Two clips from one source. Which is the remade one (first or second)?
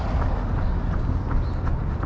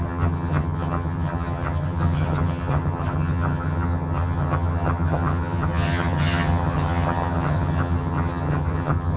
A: second